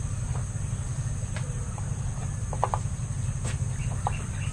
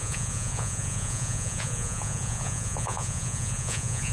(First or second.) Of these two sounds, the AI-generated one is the second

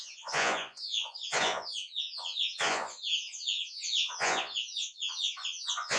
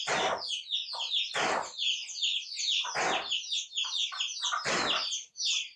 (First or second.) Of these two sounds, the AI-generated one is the first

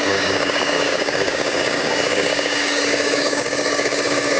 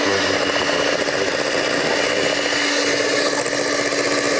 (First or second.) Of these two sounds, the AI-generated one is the first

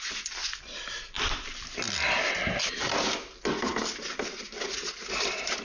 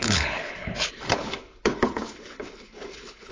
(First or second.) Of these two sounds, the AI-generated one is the second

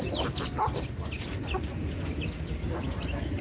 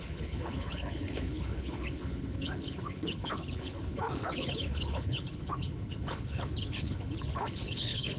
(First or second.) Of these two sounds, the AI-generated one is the second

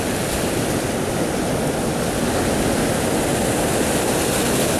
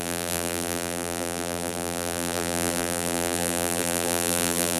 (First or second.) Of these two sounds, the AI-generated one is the second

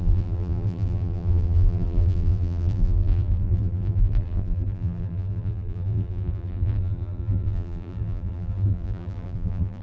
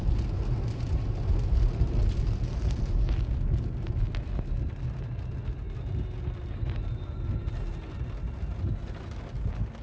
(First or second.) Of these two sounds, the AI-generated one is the first